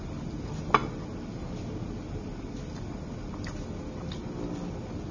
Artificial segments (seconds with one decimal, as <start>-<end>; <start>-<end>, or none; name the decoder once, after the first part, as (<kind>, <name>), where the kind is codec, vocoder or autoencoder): none